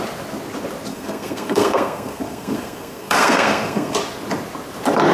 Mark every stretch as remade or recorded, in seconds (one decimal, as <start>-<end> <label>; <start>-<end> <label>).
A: 0.0-0.9 recorded; 0.9-4.0 remade; 4.0-5.1 recorded